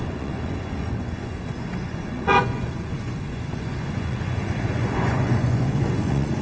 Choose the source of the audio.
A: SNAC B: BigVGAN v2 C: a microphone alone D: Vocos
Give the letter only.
D